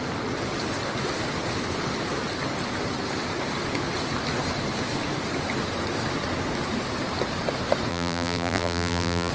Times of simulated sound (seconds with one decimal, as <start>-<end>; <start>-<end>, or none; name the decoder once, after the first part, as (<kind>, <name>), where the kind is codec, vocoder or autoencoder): 7.9-9.3 (vocoder, BigVGAN v2)